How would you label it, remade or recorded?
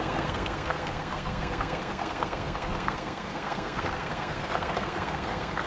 remade